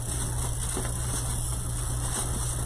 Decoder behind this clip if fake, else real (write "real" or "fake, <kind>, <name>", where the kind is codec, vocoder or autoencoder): real